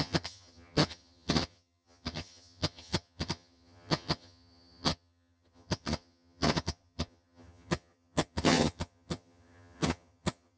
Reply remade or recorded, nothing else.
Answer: remade